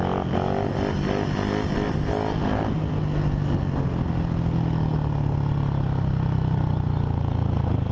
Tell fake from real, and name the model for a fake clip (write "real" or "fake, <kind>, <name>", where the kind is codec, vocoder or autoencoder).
real